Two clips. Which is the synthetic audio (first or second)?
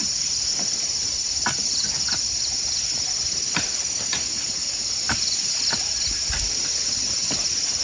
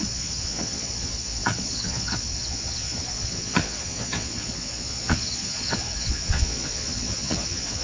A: second